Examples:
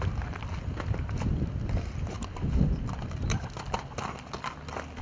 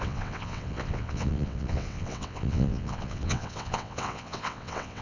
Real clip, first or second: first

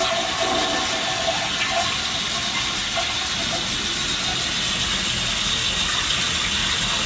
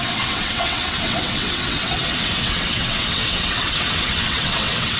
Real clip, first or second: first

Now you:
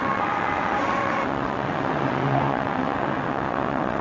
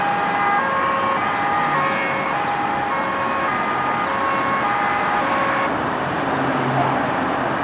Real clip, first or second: second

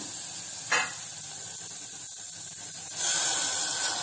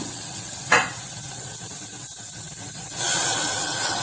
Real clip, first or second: first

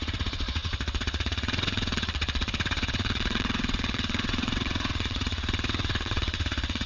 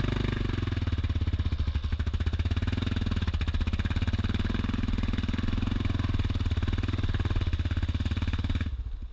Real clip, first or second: second